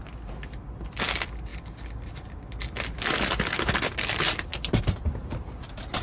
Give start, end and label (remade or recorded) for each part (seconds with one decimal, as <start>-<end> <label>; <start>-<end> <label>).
0.0-6.0 recorded

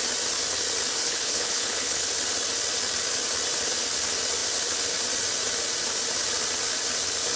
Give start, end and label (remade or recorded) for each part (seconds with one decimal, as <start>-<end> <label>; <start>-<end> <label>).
0.0-1.0 recorded; 1.0-2.1 remade; 2.1-7.4 recorded

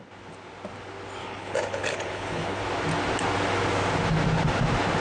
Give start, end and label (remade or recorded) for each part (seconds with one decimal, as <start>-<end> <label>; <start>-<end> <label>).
0.0-1.2 recorded; 1.2-2.6 remade; 2.6-5.0 recorded

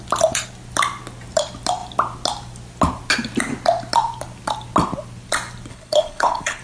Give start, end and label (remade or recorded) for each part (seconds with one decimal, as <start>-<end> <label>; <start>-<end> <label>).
0.0-5.7 recorded; 5.7-6.6 remade

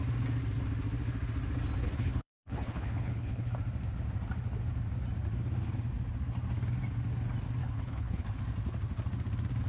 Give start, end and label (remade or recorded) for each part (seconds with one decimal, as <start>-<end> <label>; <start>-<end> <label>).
0.0-1.8 recorded; 1.8-3.5 remade; 3.5-7.6 recorded; 7.6-8.4 remade; 8.4-9.7 recorded